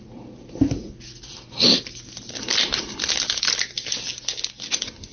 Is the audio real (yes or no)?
yes